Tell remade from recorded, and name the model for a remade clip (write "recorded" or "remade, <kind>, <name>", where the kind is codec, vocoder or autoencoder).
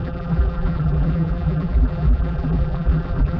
remade, vocoder, BigVGAN v2